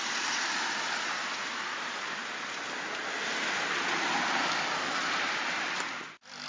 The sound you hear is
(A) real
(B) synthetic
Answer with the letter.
A